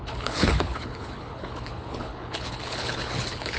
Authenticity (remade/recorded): remade